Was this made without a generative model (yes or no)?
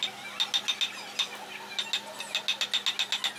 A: yes